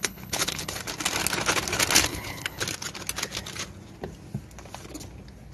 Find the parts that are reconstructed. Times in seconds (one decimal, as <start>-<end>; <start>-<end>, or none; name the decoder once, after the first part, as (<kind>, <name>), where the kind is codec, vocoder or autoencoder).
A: 0.0-0.8 (codec, HILCodec); 2.1-2.6